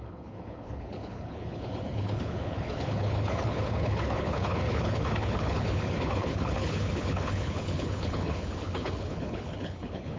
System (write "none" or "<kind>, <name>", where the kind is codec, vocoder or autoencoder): codec, HILCodec